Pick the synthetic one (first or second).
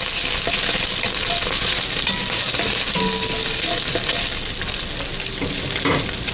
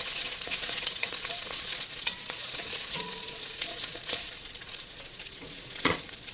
second